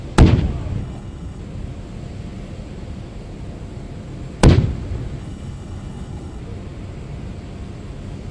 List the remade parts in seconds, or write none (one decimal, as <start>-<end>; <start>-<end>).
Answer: 0.8-1.4; 5.2-6.4

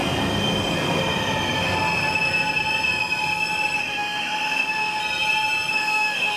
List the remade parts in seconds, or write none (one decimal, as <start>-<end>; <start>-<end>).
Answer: 3.8-5.0; 5.7-6.4

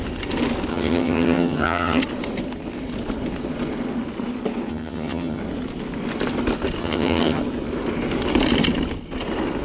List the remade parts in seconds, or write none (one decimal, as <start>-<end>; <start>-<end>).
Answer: 0.7-2.0; 4.7-5.4; 6.8-7.4

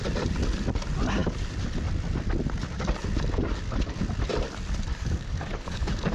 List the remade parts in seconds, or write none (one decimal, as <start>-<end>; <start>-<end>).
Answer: 4.9-6.1

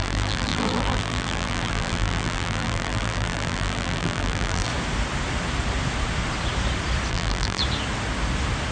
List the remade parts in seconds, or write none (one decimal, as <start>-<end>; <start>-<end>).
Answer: 0.0-4.7; 7.1-7.6